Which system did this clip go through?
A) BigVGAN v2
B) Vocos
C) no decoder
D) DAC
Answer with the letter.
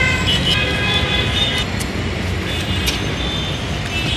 C